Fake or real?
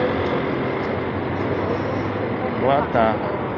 real